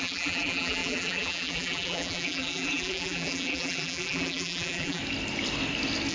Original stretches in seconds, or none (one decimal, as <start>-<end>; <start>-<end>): 5.0-6.1